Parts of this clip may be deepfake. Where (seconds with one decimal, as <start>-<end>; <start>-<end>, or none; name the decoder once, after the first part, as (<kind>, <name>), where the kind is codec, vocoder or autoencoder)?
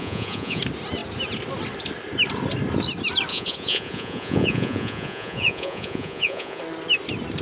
0.0-0.6 (vocoder, Vocos); 3.3-6.6